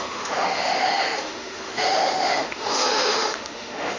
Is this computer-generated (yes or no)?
yes